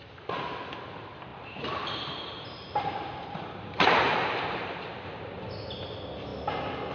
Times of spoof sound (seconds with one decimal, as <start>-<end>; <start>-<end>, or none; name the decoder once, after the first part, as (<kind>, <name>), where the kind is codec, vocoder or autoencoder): 1.3-5.4 (vocoder, BigVGAN v2)